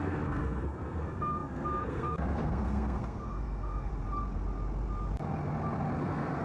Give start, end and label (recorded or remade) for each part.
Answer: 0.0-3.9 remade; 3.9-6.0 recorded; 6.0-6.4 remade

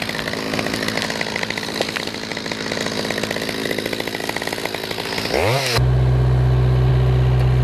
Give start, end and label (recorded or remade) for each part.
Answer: 0.0-7.6 recorded

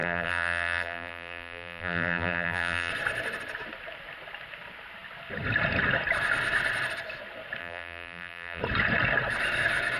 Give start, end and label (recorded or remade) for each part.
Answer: 0.0-2.9 remade; 2.9-7.6 recorded; 7.6-8.6 remade; 8.6-10.0 recorded

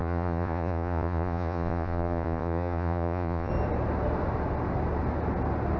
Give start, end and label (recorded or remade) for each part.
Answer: 0.0-3.5 remade; 3.5-5.8 recorded

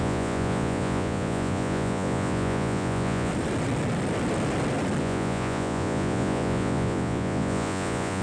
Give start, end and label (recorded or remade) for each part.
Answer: 0.0-3.3 remade; 3.3-5.0 recorded; 5.0-8.2 remade